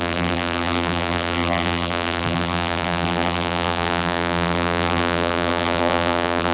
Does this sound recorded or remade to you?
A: remade